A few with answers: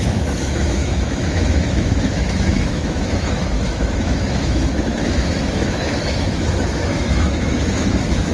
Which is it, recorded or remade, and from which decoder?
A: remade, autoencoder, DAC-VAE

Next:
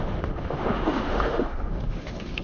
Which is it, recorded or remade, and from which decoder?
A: remade, autoencoder, DAC-VAE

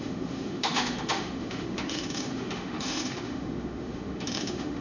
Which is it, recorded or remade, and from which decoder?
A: remade, autoencoder, DAC-VAE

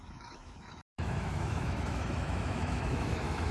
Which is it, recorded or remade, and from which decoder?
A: remade, autoencoder, DAC-VAE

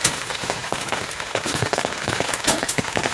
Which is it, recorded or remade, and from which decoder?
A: remade, autoencoder, DAC-VAE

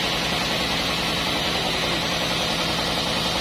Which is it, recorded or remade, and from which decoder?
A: recorded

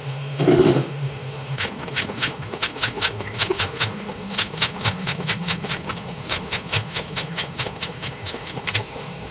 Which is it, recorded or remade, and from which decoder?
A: remade, autoencoder, DAC-VAE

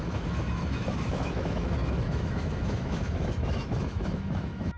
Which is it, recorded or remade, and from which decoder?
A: remade, autoencoder, DAC-VAE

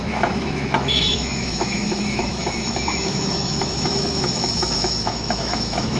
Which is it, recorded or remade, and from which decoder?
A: remade, autoencoder, DAC-VAE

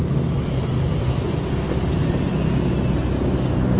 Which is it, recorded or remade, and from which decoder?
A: recorded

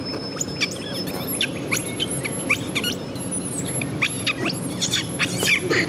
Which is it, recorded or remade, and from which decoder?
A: recorded